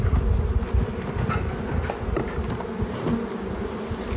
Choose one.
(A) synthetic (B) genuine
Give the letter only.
B